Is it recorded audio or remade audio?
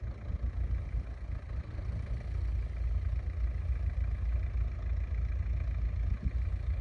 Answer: recorded